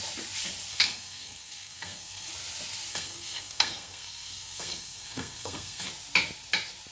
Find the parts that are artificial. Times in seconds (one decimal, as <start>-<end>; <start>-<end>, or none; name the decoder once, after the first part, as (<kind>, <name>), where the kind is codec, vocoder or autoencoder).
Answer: 0.7-2.3 (codec, SNAC); 2.9-5.9